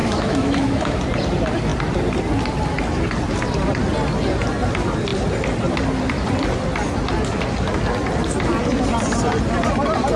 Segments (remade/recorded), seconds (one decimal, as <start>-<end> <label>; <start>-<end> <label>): 0.0-1.0 remade; 1.0-10.2 recorded